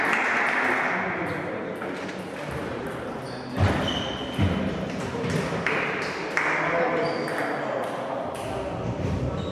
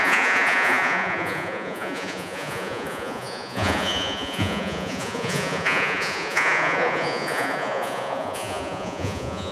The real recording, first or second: first